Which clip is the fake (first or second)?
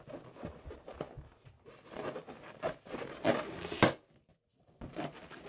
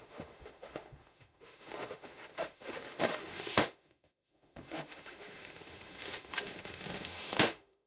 second